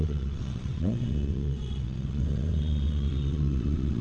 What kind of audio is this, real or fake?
fake